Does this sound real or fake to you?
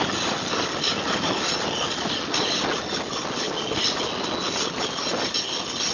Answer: real